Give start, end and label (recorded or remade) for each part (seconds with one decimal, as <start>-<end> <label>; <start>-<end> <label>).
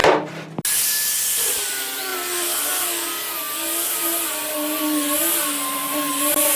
0.0-6.6 recorded